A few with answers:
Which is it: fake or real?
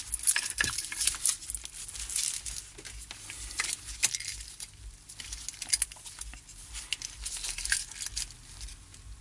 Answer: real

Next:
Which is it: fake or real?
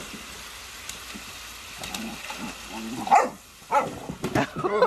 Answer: real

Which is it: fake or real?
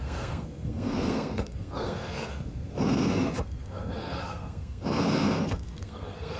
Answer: fake